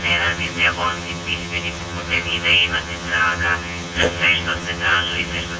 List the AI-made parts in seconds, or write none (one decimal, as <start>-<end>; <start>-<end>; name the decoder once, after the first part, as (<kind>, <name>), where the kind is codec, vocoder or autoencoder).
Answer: 0.0-5.6 (vocoder, HiFi-GAN)